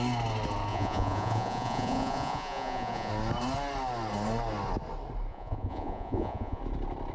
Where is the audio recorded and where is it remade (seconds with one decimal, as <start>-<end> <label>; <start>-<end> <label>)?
0.0-0.7 recorded; 0.7-3.1 remade; 3.1-5.3 recorded; 5.3-6.6 remade; 6.6-7.1 recorded

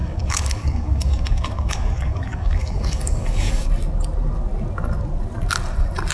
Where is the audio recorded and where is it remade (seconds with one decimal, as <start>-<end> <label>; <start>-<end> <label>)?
0.0-3.7 remade; 3.7-6.1 recorded

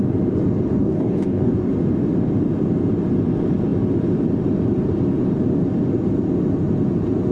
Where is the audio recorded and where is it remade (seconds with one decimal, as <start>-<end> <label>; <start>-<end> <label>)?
0.0-0.7 recorded; 0.7-1.7 remade; 1.7-7.3 recorded